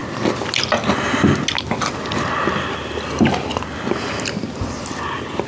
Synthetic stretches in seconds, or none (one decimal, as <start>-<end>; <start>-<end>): none